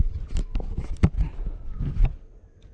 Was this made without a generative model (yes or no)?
yes